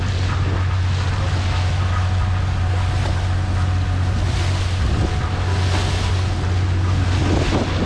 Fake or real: real